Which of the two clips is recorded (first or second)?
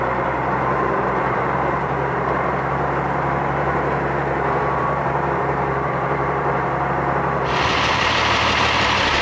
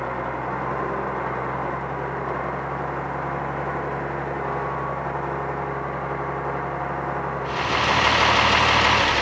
second